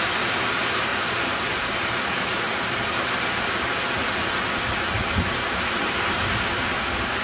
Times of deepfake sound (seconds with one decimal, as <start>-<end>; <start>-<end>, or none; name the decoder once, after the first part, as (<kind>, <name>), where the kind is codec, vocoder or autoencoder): 0.9-3.5 (vocoder, BigVGAN v2)